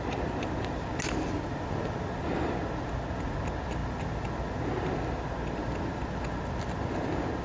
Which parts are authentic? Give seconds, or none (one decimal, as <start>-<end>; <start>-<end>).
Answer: 0.0-7.4